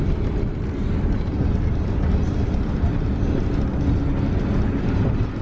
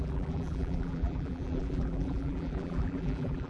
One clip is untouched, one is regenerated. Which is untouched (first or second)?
first